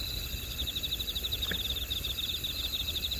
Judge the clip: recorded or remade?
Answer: recorded